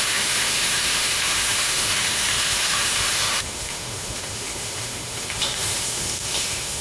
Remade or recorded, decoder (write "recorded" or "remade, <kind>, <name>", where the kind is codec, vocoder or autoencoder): remade, autoencoder, DAC-VAE